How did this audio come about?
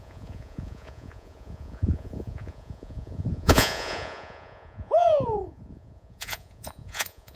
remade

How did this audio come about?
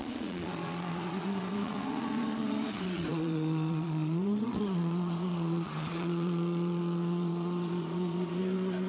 remade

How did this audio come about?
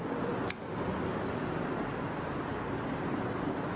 recorded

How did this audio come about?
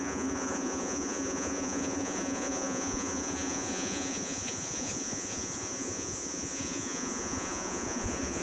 remade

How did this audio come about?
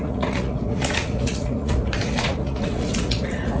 remade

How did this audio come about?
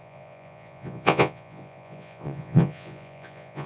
remade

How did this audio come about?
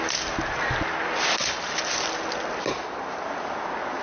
recorded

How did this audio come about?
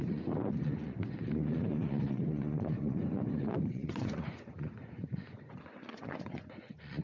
remade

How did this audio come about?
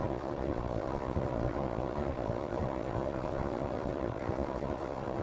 remade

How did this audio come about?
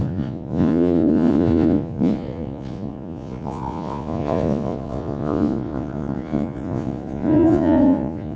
remade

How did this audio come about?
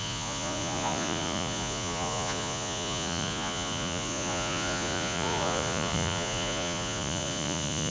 remade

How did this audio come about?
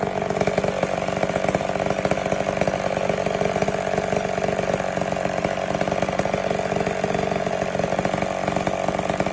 recorded